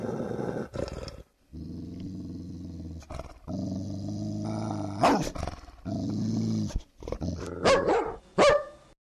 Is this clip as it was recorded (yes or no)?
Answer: yes